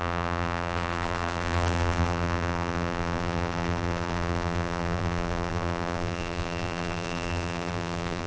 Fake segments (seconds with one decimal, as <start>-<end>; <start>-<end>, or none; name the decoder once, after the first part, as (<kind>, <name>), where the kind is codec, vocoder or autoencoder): 0.0-8.3 (vocoder, BigVGAN v2)